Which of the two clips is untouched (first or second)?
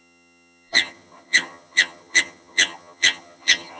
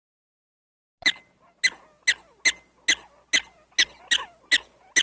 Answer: second